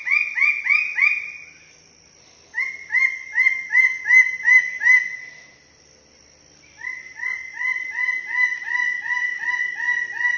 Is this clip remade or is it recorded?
recorded